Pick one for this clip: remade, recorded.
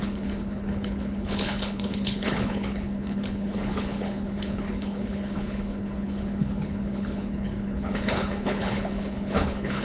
remade